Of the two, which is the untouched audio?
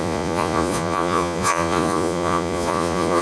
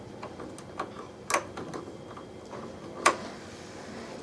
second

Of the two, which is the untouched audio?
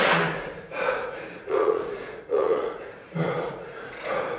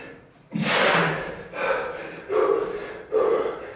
second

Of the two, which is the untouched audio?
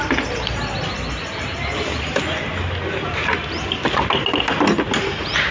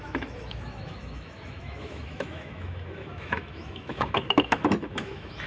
first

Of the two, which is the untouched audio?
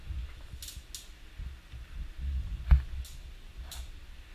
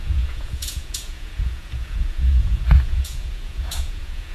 first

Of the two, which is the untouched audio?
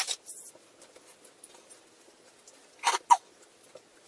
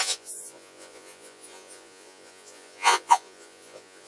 first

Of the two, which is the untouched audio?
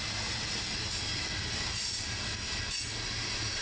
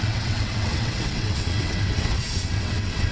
first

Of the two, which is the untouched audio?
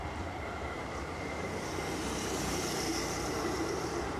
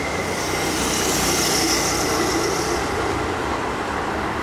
second